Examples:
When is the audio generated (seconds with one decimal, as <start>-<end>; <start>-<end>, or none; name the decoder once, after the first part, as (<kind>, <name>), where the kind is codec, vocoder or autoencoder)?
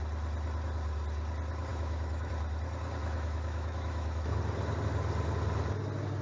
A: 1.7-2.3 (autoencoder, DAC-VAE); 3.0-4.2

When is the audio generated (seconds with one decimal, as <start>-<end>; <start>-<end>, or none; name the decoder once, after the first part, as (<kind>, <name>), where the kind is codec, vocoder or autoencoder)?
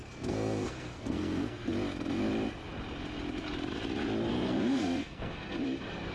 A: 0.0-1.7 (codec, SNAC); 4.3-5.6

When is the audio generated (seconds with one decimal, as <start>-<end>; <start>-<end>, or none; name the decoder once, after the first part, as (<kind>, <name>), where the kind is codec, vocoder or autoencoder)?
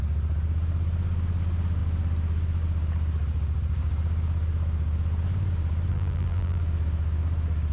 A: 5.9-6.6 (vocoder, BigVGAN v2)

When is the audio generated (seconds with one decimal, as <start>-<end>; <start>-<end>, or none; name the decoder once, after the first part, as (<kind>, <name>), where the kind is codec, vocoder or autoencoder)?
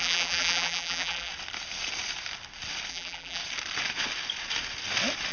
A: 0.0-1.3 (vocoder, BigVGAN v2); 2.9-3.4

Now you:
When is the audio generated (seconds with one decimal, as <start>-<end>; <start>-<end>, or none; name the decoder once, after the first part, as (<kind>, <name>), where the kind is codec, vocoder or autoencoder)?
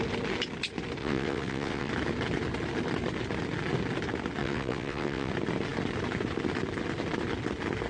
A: 1.0-1.9 (vocoder, WaveNeXt); 4.4-5.3